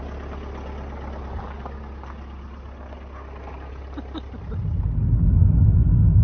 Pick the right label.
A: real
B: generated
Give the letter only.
A